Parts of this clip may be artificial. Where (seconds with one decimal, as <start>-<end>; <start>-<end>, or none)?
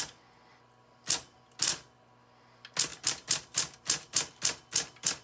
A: 2.9-4.3